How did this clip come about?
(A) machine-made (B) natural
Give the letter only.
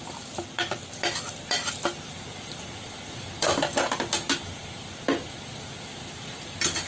B